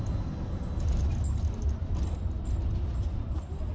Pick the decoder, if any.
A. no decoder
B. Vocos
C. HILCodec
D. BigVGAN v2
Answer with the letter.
A